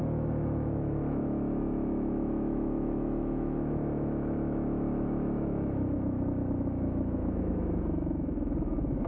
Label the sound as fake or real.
fake